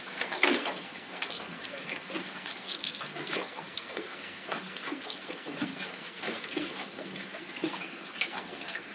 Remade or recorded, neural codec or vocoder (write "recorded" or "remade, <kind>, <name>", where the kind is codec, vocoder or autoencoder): remade, codec, SNAC